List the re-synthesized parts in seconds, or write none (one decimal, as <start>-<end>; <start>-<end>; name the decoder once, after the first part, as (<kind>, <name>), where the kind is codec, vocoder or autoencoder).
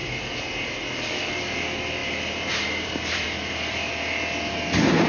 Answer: 2.0-3.9 (vocoder, BigVGAN v2)